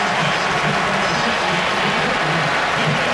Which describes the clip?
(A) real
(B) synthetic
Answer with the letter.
A